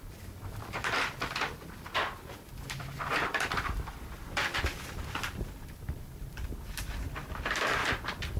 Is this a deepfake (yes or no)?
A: yes